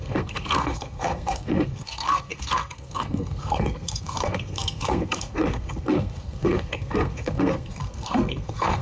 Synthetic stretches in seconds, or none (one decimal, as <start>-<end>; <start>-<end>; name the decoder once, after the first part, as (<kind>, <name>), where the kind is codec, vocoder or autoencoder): 0.0-8.8 (codec, SNAC)